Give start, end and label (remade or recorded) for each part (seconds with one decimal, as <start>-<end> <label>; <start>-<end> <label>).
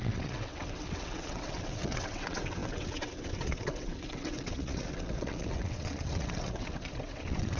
0.0-7.6 remade